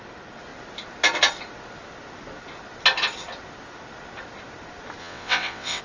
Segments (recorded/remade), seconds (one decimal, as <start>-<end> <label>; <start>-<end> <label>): 0.0-5.0 recorded; 5.0-5.8 remade